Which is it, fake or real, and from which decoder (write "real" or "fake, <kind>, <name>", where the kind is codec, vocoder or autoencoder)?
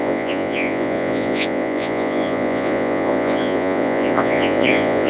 fake, vocoder, Vocos